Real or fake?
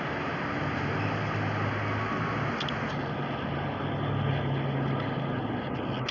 real